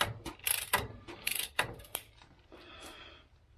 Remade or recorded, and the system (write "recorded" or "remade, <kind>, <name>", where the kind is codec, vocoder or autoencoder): recorded